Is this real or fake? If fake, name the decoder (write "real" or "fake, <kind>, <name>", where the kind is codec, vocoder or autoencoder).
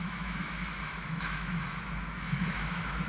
fake, autoencoder, DAC-VAE